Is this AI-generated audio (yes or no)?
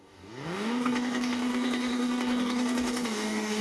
yes